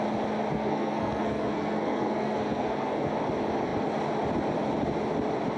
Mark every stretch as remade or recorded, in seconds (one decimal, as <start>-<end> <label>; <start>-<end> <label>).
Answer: 0.0-0.5 recorded; 0.5-3.1 remade; 3.1-5.6 recorded